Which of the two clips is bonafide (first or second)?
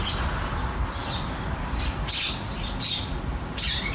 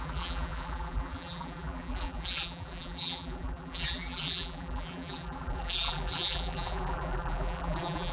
first